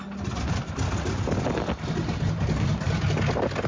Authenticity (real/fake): real